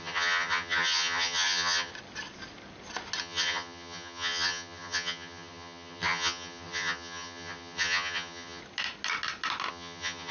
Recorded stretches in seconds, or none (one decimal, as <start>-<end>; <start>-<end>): 1.9-3.2; 8.6-9.7